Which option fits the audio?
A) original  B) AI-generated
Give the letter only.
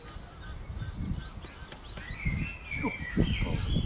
A